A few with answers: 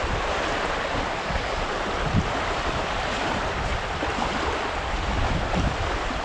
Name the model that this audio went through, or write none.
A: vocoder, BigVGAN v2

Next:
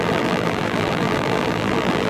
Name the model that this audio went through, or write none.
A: vocoder, BigVGAN v2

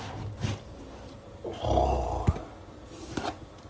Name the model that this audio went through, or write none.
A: none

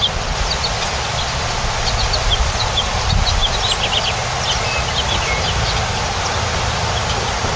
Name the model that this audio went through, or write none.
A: none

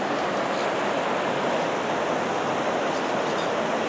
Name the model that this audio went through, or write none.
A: none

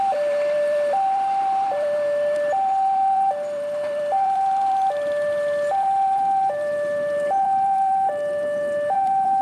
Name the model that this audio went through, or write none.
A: vocoder, BigVGAN v2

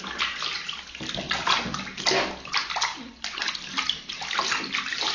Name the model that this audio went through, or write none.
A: none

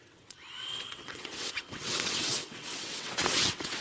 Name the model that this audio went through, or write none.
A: vocoder, WaveNeXt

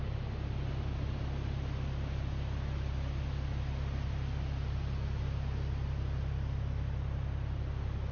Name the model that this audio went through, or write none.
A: none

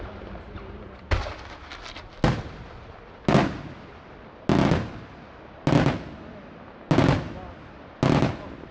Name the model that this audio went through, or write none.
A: none